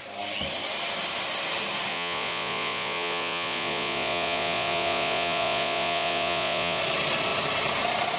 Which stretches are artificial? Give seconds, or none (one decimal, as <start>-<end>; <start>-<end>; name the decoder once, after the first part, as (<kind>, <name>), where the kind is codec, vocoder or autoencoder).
1.9-6.8 (vocoder, Vocos)